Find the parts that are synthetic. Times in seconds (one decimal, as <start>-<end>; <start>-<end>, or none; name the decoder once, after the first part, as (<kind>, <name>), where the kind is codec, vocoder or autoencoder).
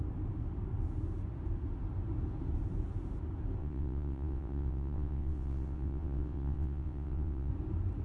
3.6-7.5 (vocoder, WaveNeXt)